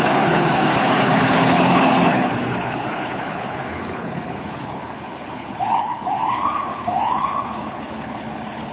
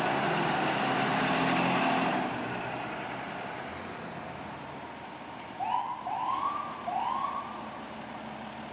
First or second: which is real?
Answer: second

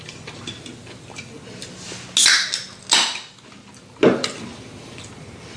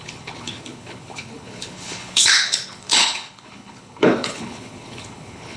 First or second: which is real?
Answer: first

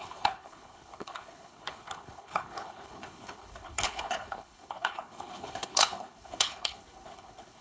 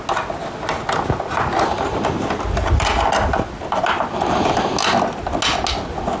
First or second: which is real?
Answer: second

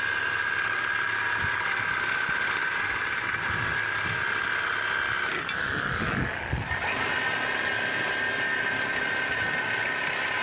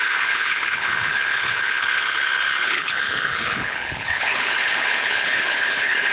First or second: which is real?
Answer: first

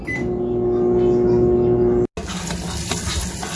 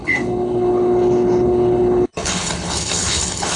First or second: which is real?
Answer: first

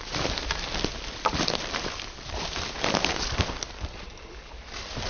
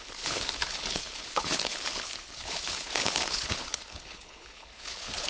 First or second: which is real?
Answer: first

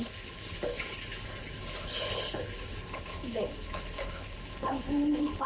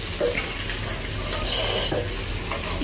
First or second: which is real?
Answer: second